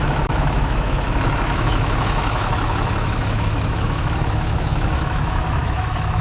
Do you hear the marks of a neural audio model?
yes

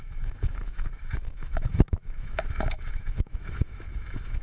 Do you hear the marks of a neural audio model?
yes